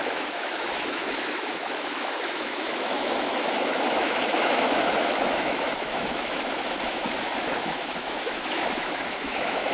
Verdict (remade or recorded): remade